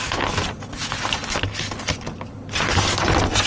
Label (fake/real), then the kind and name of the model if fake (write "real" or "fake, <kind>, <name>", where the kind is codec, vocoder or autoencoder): real